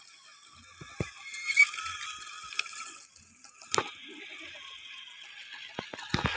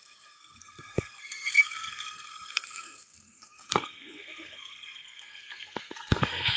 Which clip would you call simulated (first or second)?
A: second